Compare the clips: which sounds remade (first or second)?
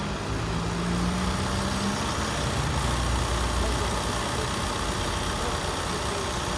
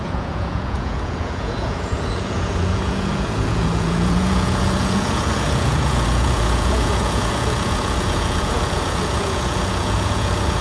second